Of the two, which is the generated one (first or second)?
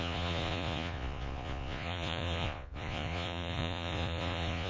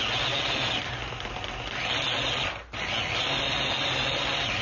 first